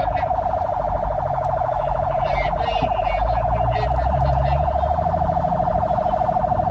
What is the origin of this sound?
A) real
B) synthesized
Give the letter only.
B